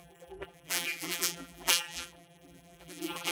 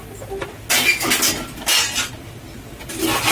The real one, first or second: second